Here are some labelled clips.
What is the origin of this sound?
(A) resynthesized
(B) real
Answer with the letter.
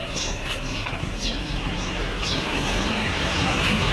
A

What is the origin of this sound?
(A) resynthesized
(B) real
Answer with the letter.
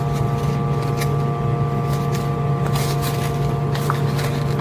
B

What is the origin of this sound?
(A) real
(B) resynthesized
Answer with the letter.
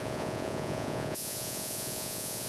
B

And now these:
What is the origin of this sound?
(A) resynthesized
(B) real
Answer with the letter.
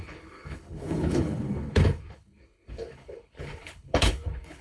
A